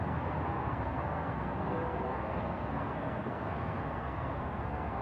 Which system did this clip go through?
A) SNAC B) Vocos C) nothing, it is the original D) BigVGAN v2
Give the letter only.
A